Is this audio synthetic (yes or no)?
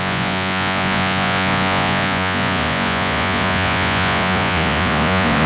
yes